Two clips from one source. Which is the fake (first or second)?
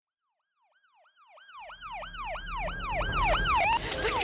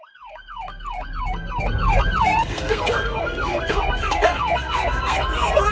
second